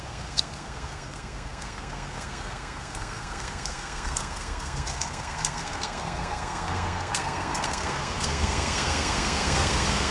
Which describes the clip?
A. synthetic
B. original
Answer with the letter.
A